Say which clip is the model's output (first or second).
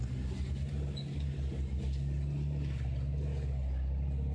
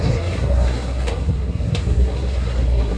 second